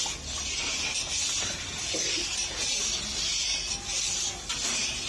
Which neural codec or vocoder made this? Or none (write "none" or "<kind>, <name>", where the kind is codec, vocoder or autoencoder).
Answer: none